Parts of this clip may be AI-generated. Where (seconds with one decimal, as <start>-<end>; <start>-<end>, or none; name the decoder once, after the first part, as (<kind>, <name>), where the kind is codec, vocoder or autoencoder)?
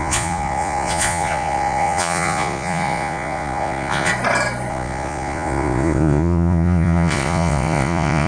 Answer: 0.0-4.1 (vocoder, Vocos); 4.7-8.3